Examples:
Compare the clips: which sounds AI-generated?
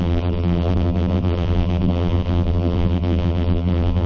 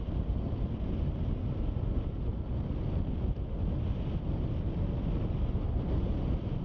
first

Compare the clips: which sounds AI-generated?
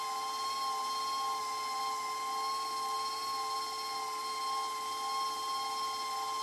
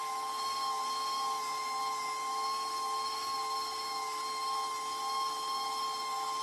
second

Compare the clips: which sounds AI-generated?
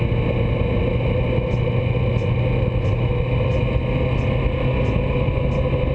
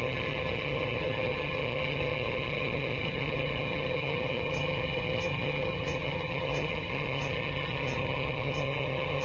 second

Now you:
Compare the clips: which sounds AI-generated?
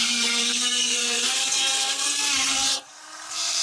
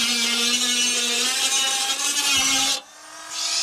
first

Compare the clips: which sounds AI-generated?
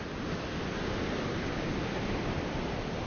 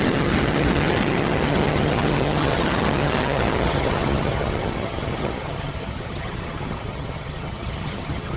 second